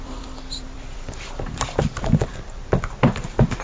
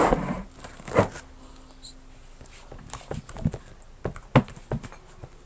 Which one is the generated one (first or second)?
first